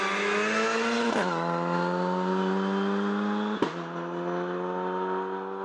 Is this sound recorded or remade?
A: recorded